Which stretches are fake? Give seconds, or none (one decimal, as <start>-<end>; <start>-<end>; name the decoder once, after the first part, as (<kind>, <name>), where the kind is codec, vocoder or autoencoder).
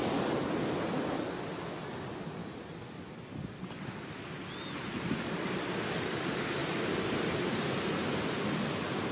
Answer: 6.6-8.0 (vocoder, BigVGAN v2)